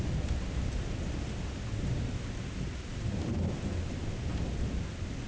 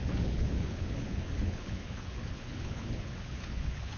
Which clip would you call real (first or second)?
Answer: first